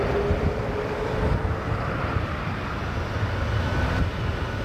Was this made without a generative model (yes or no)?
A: yes